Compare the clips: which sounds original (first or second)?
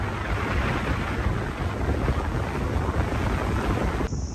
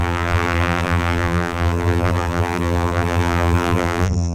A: first